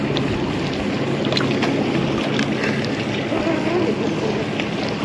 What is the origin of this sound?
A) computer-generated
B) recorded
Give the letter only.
B